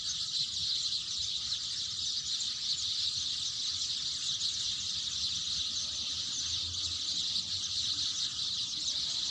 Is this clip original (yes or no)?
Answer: yes